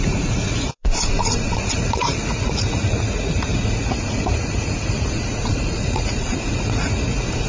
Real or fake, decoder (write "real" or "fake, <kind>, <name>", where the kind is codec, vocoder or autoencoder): fake, vocoder, Vocos